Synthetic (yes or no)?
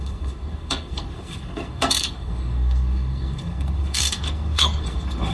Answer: yes